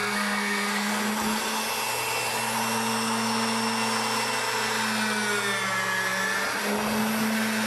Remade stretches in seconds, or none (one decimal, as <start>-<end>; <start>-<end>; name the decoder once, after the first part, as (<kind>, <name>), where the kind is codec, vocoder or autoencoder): 0.0-0.9 (codec, SNAC)